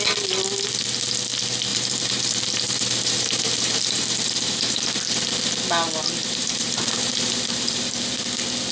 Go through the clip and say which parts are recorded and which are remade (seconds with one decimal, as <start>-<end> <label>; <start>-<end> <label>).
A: 0.0-1.7 recorded; 1.7-4.8 remade; 4.8-6.2 recorded; 6.2-8.2 remade; 8.2-8.7 recorded